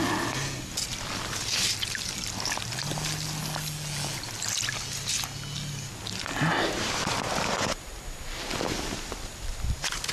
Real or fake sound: real